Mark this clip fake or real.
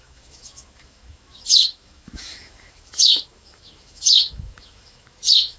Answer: fake